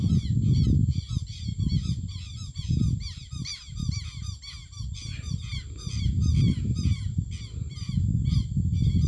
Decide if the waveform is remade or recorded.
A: recorded